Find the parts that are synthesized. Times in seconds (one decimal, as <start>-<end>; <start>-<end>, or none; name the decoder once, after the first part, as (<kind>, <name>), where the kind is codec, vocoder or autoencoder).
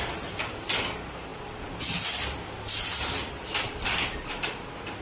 none